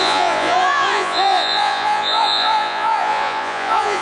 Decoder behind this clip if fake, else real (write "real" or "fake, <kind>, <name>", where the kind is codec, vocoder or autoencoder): fake, vocoder, Vocos